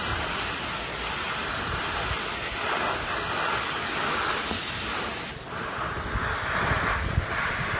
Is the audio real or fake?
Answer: real